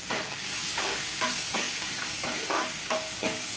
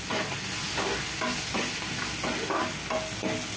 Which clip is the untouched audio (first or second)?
second